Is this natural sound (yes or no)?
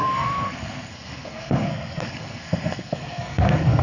no